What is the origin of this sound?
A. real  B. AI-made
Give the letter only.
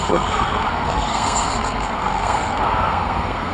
B